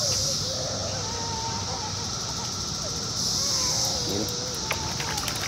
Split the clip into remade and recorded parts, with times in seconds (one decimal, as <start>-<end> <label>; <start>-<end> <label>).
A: 0.0-5.5 recorded